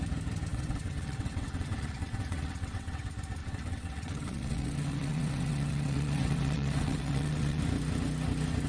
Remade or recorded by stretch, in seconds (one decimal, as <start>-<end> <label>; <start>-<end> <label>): 0.0-0.5 recorded; 0.5-3.0 remade; 3.0-3.4 recorded; 3.4-7.6 remade; 7.6-8.7 recorded